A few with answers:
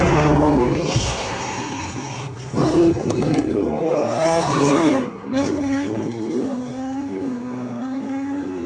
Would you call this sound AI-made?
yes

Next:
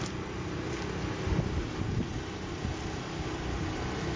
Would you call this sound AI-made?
no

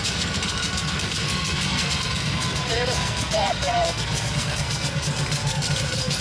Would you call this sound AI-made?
yes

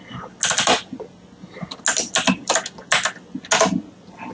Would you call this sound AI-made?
no